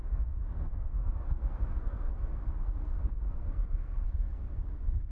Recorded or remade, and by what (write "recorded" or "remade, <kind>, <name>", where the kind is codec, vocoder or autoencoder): remade, codec, SNAC